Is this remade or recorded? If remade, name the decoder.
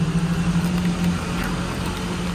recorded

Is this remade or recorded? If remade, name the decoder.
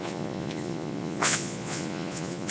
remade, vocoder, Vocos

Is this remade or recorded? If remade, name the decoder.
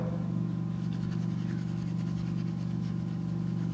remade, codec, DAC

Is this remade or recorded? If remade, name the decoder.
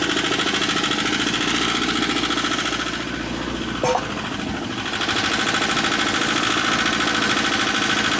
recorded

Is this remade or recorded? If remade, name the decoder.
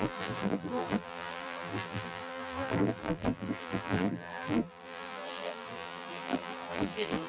remade, vocoder, BigVGAN v2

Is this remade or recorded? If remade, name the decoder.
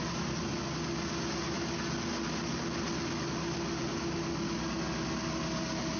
recorded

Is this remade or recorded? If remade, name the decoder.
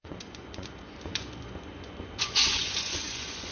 remade, vocoder, Vocos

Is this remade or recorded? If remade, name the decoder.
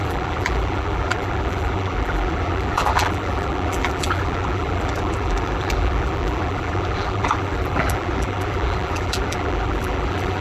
remade, vocoder, BigVGAN v2